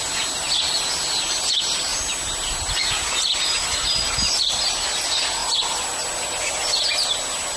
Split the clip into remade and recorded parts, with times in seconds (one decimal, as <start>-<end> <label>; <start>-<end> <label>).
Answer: 0.0-7.6 recorded